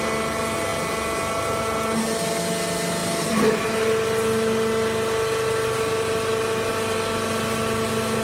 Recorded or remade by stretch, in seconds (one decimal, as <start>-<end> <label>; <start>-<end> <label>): 0.0-8.2 recorded